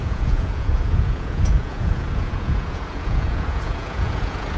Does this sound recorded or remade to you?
remade